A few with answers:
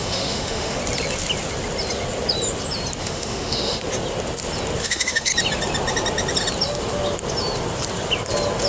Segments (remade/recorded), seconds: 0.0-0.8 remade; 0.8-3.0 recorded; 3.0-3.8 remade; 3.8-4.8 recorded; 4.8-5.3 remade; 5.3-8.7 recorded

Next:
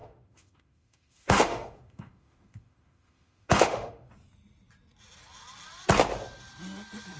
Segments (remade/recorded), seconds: 0.0-4.1 remade; 4.1-7.2 recorded

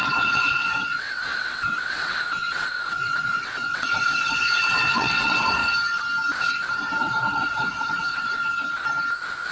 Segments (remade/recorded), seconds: 0.0-5.6 remade; 5.6-6.4 recorded; 6.4-8.4 remade; 8.4-9.5 recorded

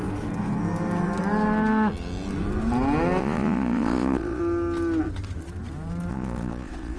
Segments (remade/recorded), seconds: 0.0-3.2 recorded; 3.2-4.4 remade; 4.4-6.1 recorded; 6.1-7.0 remade

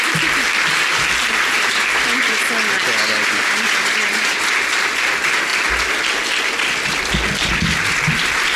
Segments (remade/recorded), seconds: 0.0-8.6 recorded